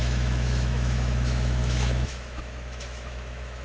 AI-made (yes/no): yes